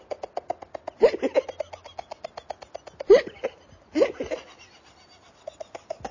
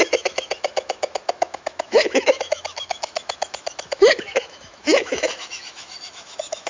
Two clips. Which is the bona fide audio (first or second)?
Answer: first